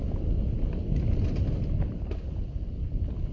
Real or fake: real